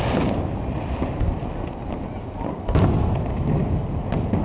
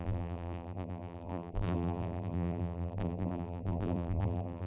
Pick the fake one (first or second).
second